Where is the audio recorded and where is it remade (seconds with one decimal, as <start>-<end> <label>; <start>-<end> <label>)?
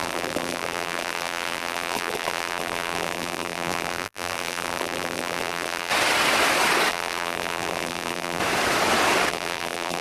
0.0-5.9 remade; 5.9-6.9 recorded; 6.9-8.4 remade; 8.4-9.3 recorded; 9.3-10.0 remade